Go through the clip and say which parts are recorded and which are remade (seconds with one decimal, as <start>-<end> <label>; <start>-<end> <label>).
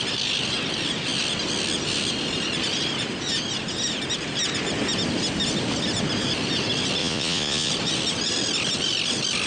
0.0-7.0 recorded; 7.0-7.7 remade; 7.7-9.5 recorded